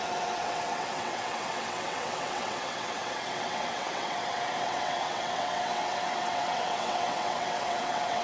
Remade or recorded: remade